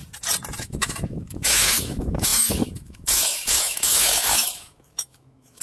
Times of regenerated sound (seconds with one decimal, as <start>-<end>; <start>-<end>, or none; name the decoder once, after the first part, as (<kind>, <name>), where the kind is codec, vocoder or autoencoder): 0.6-5.6 (autoencoder, DAC-VAE)